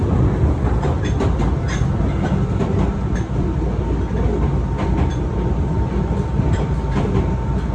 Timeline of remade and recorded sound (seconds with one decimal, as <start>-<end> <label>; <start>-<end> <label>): 0.0-7.7 recorded